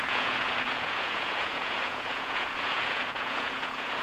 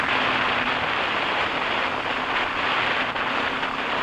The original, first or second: second